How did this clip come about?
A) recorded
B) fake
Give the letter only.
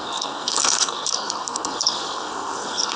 B